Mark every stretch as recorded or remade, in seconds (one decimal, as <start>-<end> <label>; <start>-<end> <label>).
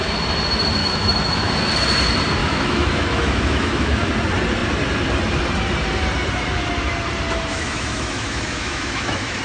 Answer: 0.0-0.8 recorded; 0.8-1.5 remade; 1.5-2.4 recorded; 2.4-4.1 remade; 4.1-7.5 recorded; 7.5-9.4 remade